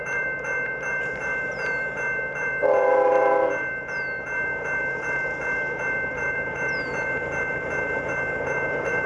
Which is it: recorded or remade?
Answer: remade